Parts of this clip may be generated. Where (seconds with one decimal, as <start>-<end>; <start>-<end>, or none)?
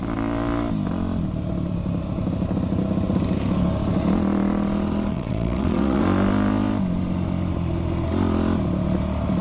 5.1-6.0